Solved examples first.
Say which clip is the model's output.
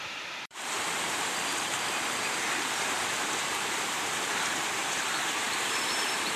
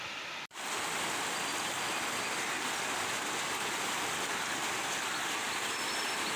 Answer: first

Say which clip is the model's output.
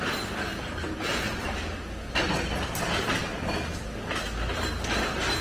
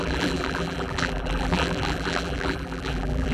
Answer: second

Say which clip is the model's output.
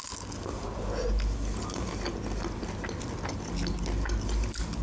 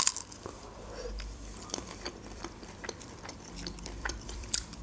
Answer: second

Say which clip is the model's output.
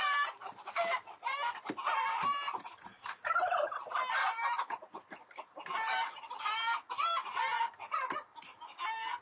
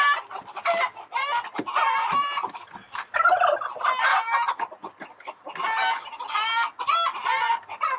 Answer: first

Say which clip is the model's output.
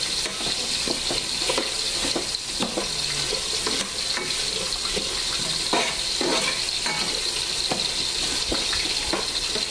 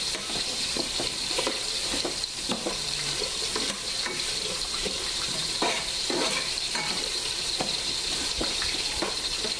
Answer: second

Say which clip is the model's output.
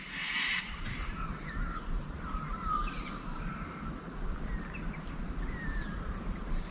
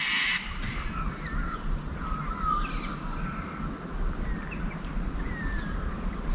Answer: first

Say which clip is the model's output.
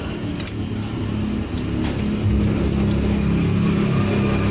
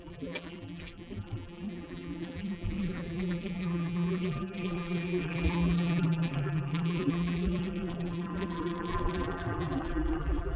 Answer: second